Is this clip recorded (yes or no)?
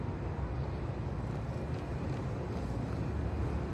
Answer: yes